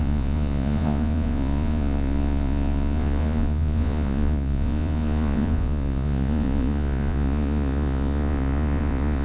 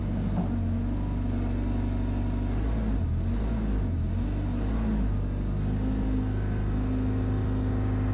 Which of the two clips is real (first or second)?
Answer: second